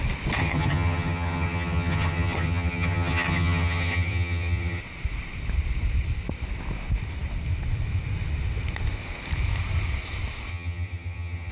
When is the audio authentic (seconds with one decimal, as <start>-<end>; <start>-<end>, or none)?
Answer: 0.0-0.4; 4.8-10.5